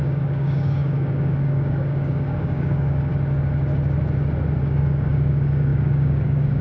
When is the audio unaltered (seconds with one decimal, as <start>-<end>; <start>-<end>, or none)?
3.1-4.6